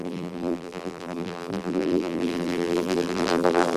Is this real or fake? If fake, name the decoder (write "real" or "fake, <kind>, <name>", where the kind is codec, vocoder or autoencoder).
fake, vocoder, BigVGAN v2